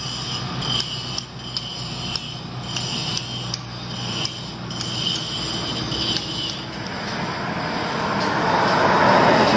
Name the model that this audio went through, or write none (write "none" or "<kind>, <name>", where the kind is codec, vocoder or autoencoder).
none